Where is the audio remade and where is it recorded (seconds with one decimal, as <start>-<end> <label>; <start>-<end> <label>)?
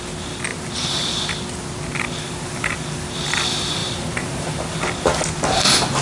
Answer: 0.0-0.5 recorded; 0.5-1.2 remade; 1.2-3.8 recorded; 3.8-4.6 remade; 4.6-6.0 recorded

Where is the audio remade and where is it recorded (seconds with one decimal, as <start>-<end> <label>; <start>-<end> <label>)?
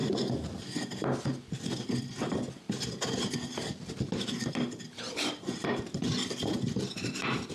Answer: 0.0-4.5 recorded; 4.5-7.5 remade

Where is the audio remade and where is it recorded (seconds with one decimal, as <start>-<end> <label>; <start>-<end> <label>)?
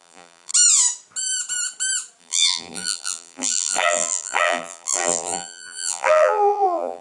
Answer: 0.0-0.5 remade; 0.5-2.2 recorded; 2.2-7.0 remade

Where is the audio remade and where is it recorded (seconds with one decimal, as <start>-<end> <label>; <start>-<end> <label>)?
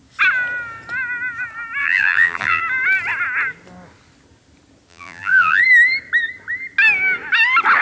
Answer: 0.0-1.8 recorded; 1.8-2.6 remade; 2.6-4.9 recorded; 4.9-5.6 remade; 5.6-7.8 recorded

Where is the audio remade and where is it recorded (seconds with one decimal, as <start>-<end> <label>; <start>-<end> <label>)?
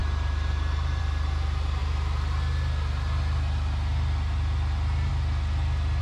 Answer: 0.0-6.0 recorded